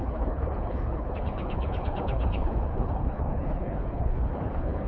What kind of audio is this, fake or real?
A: fake